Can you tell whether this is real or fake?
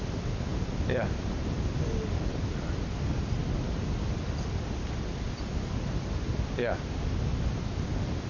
real